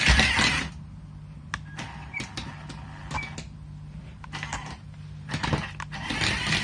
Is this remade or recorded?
recorded